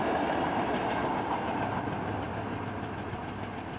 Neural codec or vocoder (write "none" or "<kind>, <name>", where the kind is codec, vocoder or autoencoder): none